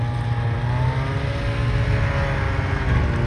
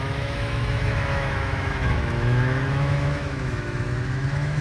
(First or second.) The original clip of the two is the first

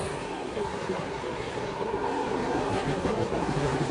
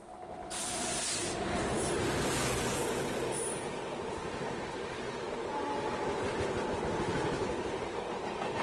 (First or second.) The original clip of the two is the second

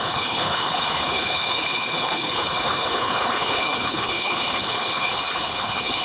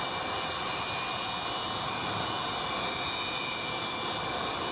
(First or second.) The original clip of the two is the second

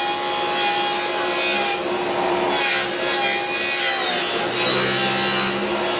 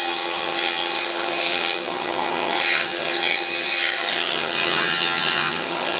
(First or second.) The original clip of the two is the first